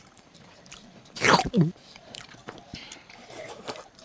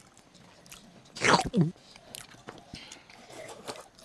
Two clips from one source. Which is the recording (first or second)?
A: second